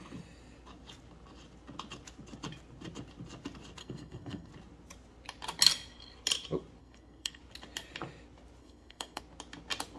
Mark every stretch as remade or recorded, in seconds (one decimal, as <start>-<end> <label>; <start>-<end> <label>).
0.0-3.8 recorded; 3.8-4.5 remade; 4.5-6.8 recorded; 6.8-7.4 remade; 7.4-8.6 recorded; 8.6-9.2 remade; 9.2-10.0 recorded